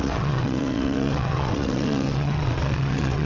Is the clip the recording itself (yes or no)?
no